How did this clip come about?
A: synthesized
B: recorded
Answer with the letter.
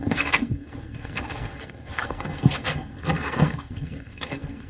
A